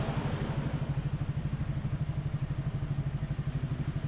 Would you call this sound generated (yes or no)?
no